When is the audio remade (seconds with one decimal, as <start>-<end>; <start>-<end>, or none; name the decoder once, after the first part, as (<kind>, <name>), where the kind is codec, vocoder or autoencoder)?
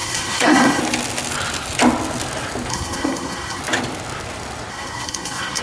0.0-0.8 (codec, SNAC); 2.7-3.6; 4.7-5.6